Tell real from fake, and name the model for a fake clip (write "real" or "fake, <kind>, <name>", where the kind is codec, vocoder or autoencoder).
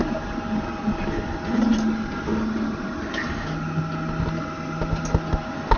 real